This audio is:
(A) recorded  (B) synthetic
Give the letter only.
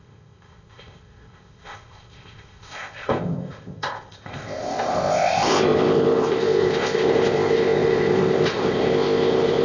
B